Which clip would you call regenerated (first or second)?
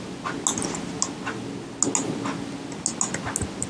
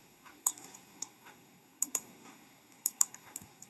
second